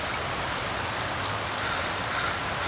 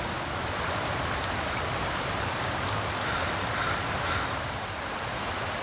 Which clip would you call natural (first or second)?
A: first